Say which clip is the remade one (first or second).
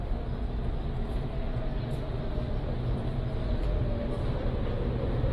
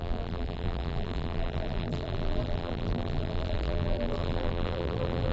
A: second